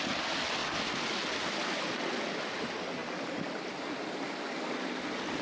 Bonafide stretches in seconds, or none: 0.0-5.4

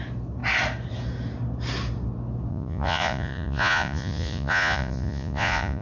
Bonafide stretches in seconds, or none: 0.0-2.5

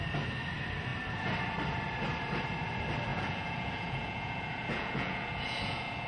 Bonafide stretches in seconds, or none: 0.0-3.1

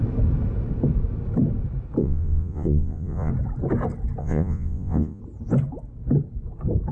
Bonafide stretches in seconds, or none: 0.0-2.0; 3.3-4.2; 5.2-6.9

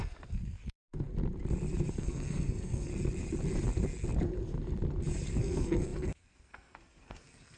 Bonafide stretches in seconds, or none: 1.1-1.9; 2.9-5.4

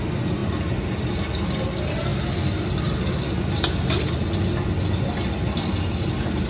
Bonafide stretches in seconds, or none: 0.0-6.5

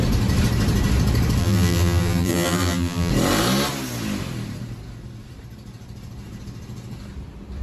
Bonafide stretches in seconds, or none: 0.0-1.4; 3.1-7.6

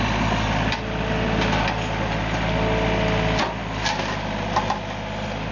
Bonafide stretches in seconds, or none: 0.0-5.5